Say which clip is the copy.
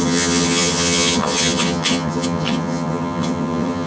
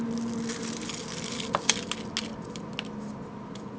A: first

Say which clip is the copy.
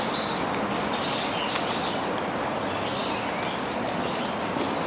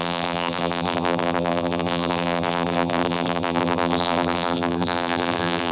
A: second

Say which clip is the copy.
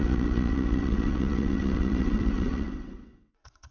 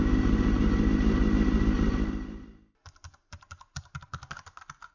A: first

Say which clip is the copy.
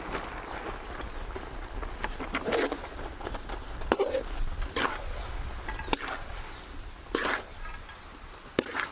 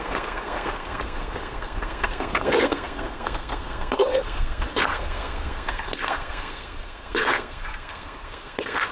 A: second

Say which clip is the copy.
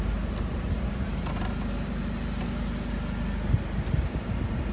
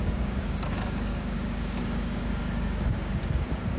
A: second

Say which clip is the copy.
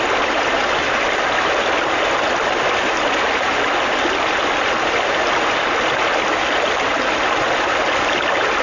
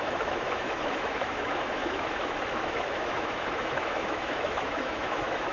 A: second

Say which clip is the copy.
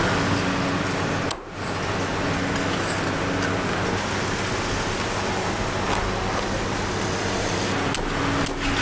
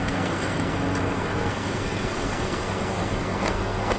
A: second